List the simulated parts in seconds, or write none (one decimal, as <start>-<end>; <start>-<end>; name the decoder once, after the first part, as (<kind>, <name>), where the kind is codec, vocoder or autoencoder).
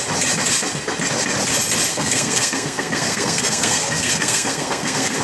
1.9-5.2 (codec, SNAC)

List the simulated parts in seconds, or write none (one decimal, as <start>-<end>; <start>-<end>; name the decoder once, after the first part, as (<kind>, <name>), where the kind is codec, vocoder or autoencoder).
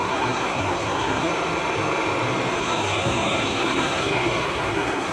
0.0-1.3 (codec, SNAC); 2.6-5.1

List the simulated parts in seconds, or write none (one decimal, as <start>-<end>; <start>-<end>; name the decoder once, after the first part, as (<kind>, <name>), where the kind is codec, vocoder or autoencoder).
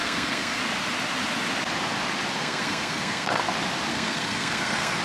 0.0-0.6 (codec, SNAC); 2.4-3.4; 3.9-5.0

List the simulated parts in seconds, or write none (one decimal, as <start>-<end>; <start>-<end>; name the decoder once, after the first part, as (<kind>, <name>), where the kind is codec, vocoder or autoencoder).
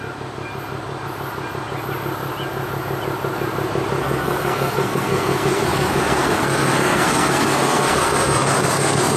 4.0-9.2 (codec, SNAC)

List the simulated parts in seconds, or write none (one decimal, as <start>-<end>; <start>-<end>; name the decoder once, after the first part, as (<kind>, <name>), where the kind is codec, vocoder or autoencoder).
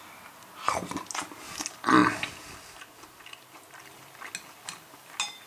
none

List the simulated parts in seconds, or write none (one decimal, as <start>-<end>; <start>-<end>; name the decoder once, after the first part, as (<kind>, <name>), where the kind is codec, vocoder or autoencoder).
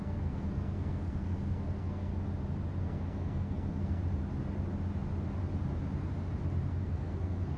0.0-2.1 (codec, SNAC); 2.8-4.0; 6.7-7.6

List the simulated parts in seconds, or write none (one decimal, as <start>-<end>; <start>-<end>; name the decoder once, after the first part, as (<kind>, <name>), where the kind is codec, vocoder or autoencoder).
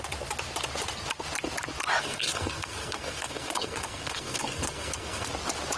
2.0-5.3 (codec, SNAC)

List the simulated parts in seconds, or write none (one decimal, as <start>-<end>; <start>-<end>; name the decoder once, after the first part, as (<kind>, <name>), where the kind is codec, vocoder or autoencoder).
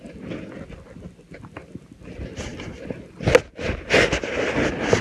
none